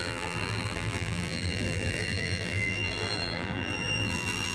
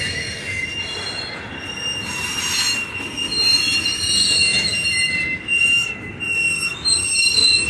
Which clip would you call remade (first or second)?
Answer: first